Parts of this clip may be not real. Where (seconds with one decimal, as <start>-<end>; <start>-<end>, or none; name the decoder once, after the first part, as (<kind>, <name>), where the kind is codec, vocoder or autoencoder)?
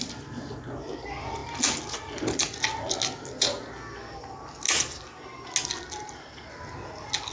none